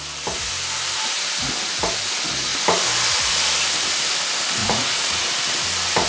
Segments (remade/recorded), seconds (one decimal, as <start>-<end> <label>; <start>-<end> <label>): 0.0-4.6 recorded; 4.6-5.2 remade; 5.2-6.1 recorded